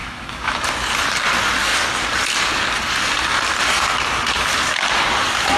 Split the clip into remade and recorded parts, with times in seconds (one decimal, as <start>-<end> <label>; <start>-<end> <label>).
0.0-0.7 remade; 0.7-5.6 recorded